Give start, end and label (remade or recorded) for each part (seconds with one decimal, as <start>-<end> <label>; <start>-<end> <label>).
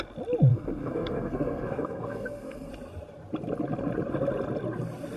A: 0.0-0.5 recorded; 0.5-2.7 remade; 2.7-5.2 recorded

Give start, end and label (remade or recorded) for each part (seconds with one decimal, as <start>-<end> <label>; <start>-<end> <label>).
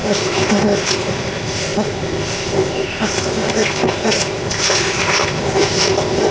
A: 0.0-6.3 remade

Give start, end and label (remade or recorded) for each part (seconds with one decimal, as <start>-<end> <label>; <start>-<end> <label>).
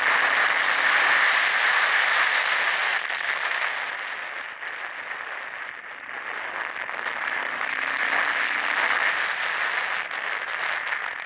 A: 0.0-11.3 recorded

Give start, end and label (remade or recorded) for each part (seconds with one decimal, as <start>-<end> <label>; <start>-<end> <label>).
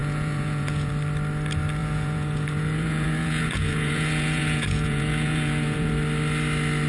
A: 0.0-0.9 remade; 0.9-1.8 recorded; 1.8-5.9 remade; 5.9-6.9 recorded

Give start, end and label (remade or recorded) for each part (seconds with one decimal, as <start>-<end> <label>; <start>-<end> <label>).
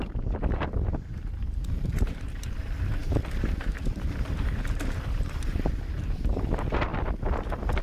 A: 0.0-6.9 remade; 6.9-7.8 recorded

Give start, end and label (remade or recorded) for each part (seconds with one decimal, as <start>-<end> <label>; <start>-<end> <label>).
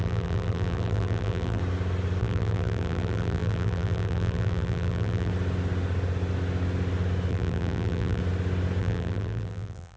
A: 0.0-1.6 remade; 1.6-2.2 recorded; 2.2-5.3 remade; 5.3-7.3 recorded; 7.3-8.2 remade; 8.2-8.8 recorded; 8.8-10.0 remade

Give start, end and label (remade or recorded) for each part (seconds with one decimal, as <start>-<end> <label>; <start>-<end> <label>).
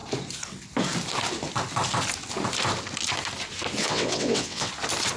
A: 0.0-3.8 recorded; 3.8-4.7 remade; 4.7-5.2 recorded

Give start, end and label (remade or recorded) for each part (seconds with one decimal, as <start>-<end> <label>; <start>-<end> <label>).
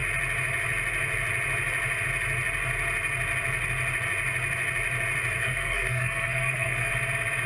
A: 0.0-5.4 recorded; 5.4-6.9 remade; 6.9-7.5 recorded